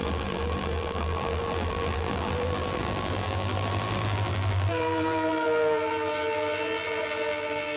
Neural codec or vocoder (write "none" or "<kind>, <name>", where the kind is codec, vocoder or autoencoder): vocoder, BigVGAN v2